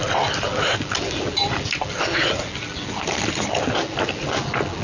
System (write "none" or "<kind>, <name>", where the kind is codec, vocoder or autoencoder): none